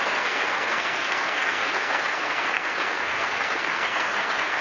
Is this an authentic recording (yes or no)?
no